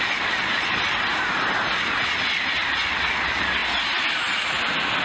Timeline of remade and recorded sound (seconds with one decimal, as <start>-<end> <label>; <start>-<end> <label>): 0.0-1.1 recorded; 1.1-1.6 remade; 1.6-5.0 recorded